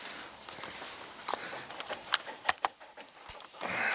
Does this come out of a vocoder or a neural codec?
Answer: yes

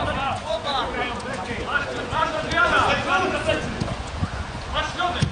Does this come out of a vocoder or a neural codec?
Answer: yes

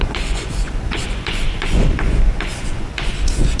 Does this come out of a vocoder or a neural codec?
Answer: yes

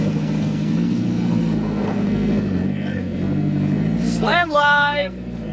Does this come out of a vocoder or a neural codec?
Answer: yes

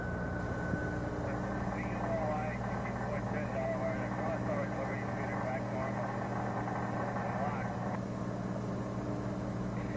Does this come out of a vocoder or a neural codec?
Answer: no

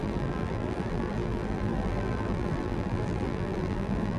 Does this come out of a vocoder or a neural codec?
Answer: yes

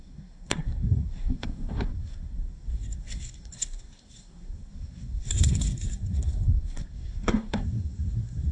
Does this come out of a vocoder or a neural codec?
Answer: yes